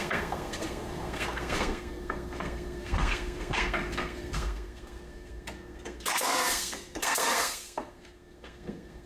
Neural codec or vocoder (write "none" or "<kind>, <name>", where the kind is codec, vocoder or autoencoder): codec, SNAC